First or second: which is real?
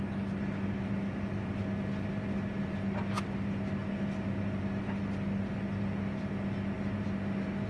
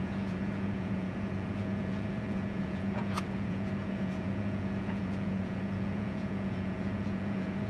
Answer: first